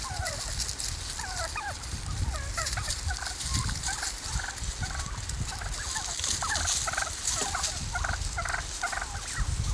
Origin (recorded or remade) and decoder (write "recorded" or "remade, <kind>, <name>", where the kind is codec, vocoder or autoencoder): recorded